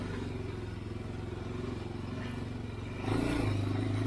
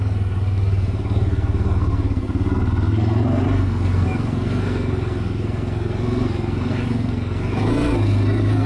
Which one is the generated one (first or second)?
second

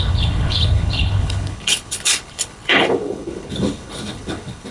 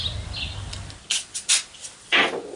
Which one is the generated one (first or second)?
first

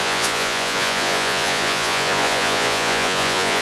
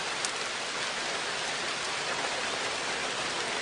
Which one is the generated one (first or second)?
first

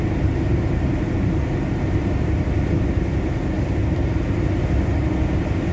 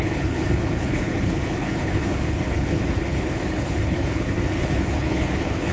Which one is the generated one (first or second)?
second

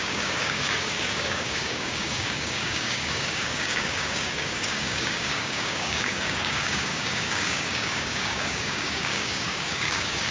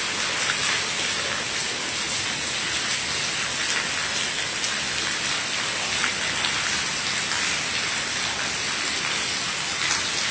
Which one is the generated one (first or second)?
first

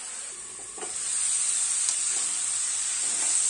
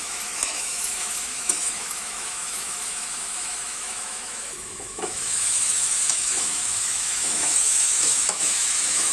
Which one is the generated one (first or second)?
second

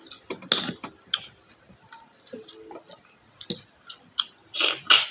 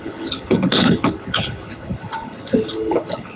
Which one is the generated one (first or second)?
second